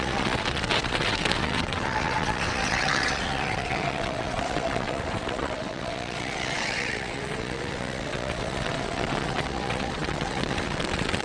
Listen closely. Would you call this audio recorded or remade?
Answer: remade